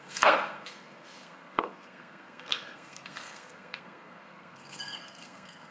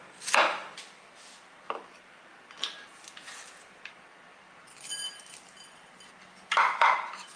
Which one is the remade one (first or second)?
first